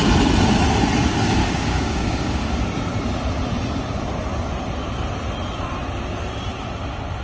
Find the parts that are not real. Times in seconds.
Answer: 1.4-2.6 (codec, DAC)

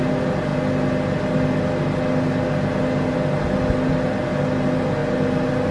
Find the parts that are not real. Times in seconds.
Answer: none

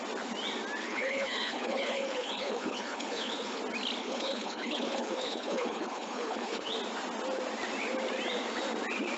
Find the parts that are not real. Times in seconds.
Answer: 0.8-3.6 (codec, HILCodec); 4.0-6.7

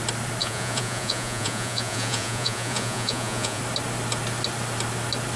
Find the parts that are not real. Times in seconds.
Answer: 0.4-3.6 (vocoder, Vocos)

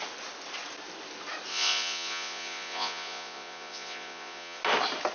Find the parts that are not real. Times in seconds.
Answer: 1.5-4.6 (vocoder, Vocos)

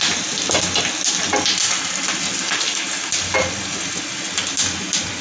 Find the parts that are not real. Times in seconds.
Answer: none